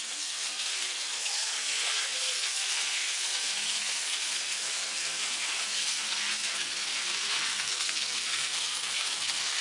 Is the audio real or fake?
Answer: fake